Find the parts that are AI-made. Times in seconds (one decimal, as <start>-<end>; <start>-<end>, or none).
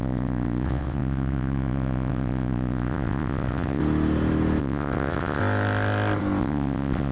0.0-3.8; 4.6-5.4; 6.4-7.1